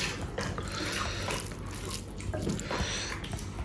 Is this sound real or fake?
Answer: real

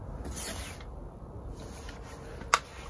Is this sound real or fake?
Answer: real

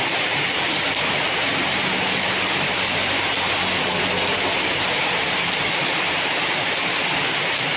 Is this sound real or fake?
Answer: real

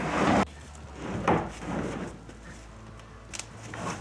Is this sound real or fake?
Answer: real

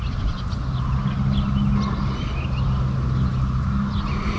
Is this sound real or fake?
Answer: real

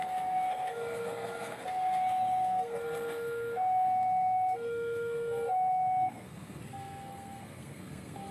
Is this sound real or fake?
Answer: fake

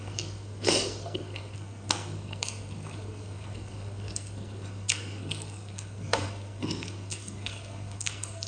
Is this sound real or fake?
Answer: fake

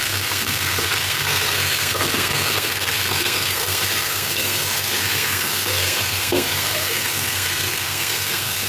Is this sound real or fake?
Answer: fake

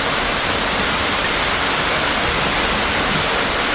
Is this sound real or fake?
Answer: real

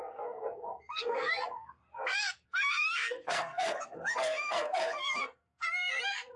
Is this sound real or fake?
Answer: fake